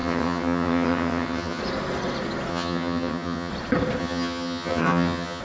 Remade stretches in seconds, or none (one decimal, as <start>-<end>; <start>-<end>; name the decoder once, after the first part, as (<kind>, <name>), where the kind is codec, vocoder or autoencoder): 0.0-1.6 (vocoder, HiFi-GAN); 2.5-3.5; 4.0-5.4